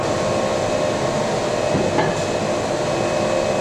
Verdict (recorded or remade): recorded